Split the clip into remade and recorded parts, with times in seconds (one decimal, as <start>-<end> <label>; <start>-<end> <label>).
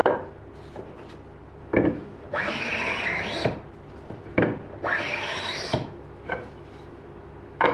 0.0-1.6 recorded; 1.6-2.7 remade; 2.7-5.2 recorded; 5.2-7.7 remade